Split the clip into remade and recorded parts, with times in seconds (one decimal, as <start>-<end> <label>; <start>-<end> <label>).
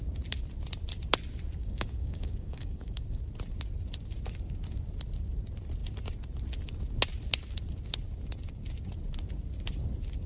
0.0-1.6 recorded; 1.6-3.2 remade; 3.2-10.3 recorded